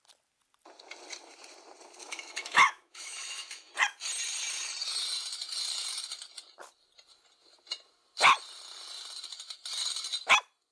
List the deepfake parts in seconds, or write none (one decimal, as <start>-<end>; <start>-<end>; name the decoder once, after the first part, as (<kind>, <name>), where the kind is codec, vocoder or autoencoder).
2.0-3.7 (autoencoder, DAC-VAE)